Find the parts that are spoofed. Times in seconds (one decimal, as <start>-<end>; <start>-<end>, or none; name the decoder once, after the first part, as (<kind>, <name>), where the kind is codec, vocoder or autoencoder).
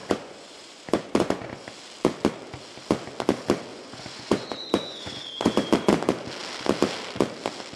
0.0-1.7 (vocoder, Vocos); 3.7-5.7